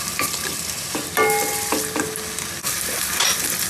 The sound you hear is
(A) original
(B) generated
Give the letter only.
A